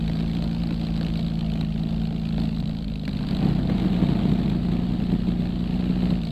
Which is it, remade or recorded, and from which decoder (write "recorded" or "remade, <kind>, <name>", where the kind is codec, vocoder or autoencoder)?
recorded